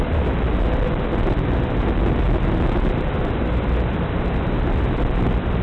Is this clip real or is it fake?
real